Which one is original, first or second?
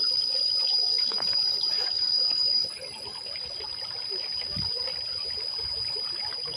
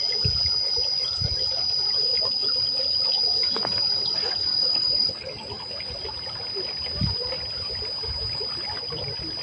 second